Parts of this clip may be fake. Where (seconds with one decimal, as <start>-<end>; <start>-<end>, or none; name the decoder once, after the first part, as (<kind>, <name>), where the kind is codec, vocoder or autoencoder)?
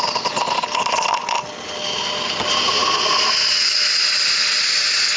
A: none